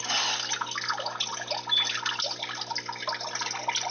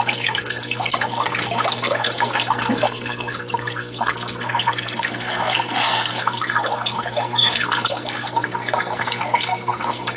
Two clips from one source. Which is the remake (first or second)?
second